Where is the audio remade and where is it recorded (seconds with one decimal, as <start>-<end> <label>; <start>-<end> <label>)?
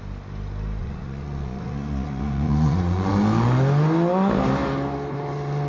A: 0.0-0.8 recorded; 0.8-3.1 remade; 3.1-5.7 recorded